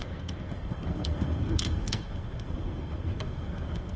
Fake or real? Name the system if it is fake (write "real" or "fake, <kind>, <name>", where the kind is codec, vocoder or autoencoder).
fake, codec, SNAC